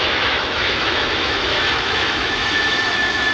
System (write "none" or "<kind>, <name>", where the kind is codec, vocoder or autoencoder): autoencoder, DAC-VAE